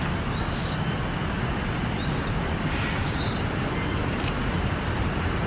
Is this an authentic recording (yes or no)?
yes